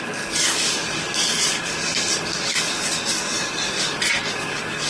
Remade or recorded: remade